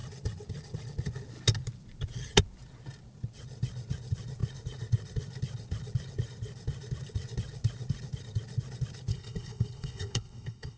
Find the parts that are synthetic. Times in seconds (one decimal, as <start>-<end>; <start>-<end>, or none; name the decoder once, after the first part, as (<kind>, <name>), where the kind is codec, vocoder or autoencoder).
9.1-10.8 (codec, HILCodec)